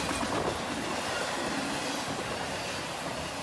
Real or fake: real